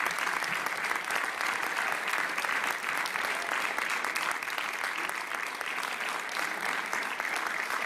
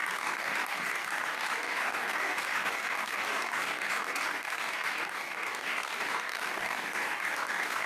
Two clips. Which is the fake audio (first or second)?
second